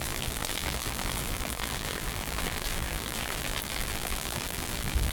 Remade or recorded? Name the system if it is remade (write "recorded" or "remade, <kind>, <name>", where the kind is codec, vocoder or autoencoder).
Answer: remade, vocoder, BigVGAN v2